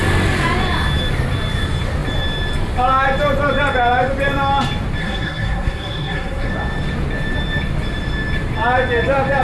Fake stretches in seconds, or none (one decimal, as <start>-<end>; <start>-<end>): 5.0-6.5